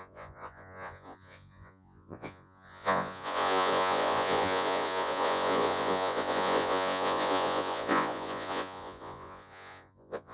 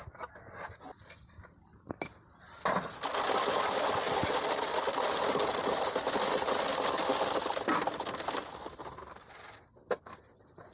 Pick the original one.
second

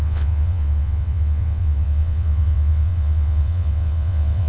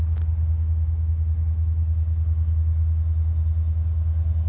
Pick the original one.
second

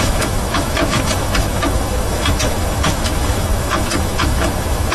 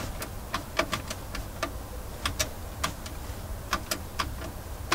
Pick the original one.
second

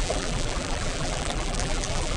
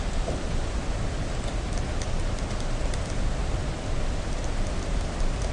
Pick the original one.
second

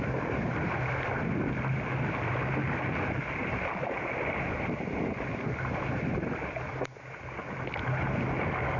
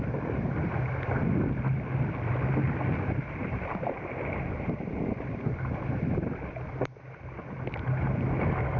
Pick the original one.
first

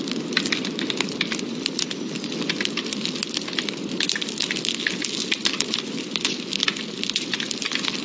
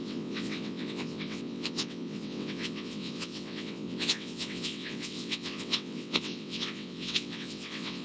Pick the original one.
first